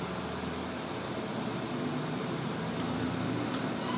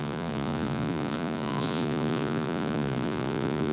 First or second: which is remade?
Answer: second